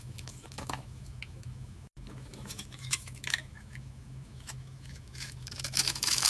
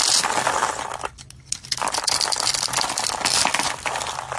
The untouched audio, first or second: second